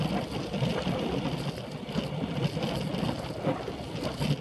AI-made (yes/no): no